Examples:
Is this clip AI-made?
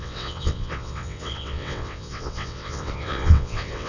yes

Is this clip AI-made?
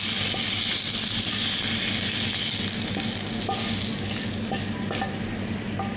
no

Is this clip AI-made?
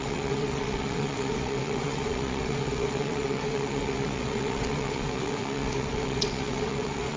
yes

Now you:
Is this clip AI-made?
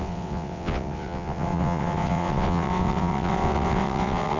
yes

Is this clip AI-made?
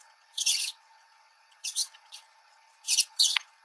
yes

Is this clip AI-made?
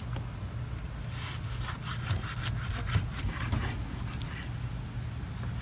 no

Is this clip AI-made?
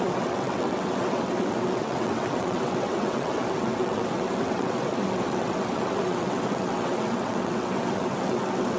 yes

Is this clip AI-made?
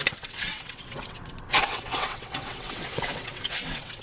yes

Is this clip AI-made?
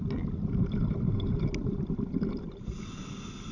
no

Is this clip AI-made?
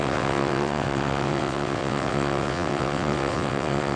yes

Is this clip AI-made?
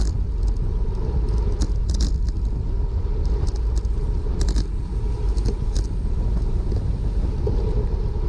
no